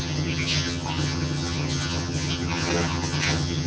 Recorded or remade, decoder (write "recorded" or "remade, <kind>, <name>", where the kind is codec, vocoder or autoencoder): remade, vocoder, HiFi-GAN